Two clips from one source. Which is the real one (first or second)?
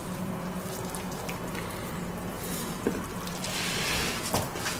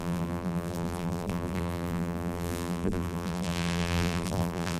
first